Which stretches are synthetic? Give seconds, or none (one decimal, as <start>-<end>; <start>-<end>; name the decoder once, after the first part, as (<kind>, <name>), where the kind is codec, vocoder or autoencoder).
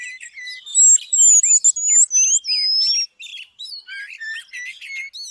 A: 3.3-4.4 (vocoder, BigVGAN v2)